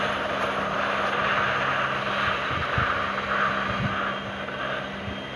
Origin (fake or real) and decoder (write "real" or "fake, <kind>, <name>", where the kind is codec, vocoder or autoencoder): real